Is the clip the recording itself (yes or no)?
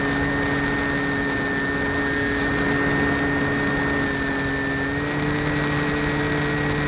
yes